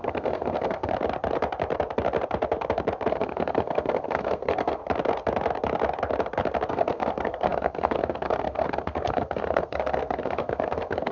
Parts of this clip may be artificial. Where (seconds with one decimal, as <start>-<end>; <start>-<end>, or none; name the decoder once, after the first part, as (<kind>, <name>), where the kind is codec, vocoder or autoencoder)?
0.0-0.9 (codec, SNAC); 3.1-4.8; 6.7-11.1